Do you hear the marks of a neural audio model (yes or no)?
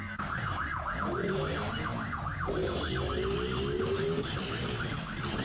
no